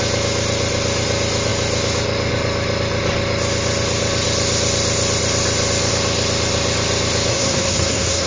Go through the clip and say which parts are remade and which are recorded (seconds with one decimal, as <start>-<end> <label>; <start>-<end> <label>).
0.0-7.3 recorded; 7.3-8.3 remade